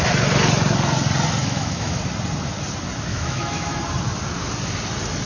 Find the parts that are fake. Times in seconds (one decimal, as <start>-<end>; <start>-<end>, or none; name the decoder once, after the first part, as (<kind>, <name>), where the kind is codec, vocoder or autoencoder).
1.4-2.0 (autoencoder, DAC-VAE); 3.1-3.8